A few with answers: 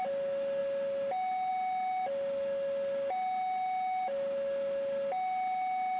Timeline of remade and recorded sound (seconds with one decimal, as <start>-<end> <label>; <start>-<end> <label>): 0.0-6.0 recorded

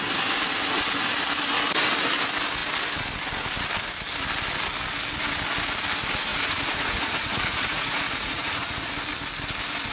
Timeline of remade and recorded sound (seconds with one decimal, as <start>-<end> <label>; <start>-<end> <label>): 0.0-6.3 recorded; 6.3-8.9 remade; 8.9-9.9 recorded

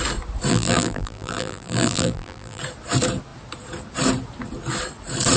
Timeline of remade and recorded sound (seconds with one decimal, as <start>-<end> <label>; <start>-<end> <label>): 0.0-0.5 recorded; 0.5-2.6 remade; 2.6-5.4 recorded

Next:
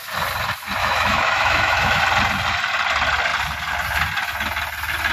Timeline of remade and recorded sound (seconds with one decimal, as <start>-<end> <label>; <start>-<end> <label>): 0.0-0.8 recorded; 0.8-2.0 remade; 2.0-5.1 recorded

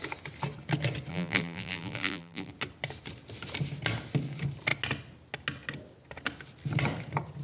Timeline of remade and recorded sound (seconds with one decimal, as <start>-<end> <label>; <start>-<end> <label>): 0.0-1.1 recorded; 1.1-2.5 remade; 2.5-7.4 recorded

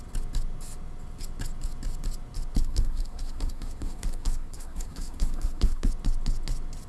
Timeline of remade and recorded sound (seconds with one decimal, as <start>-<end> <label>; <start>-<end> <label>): 0.0-2.6 recorded; 2.6-5.9 remade; 5.9-6.9 recorded

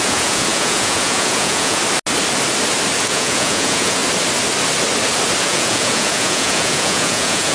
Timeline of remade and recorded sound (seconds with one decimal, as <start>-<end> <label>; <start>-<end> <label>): 0.0-1.8 remade; 1.8-3.0 recorded; 3.0-4.0 remade; 4.0-5.4 recorded; 5.4-7.5 remade